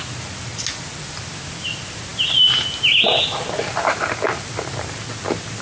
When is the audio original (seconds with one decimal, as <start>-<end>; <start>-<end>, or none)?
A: 0.0-5.6